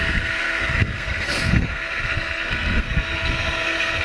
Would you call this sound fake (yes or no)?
yes